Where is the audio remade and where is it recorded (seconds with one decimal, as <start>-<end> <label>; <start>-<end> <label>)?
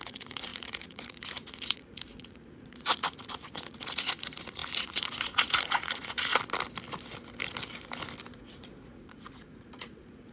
0.0-6.3 remade; 6.3-8.3 recorded; 8.3-10.3 remade